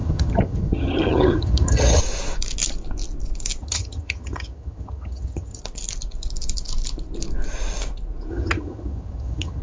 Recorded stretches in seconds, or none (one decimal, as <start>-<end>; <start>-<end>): 2.0-3.6; 5.6-8.3